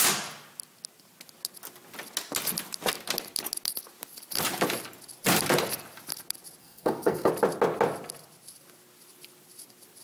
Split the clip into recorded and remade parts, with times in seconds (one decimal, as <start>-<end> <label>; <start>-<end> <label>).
0.0-6.6 recorded; 6.6-7.3 remade; 7.3-10.0 recorded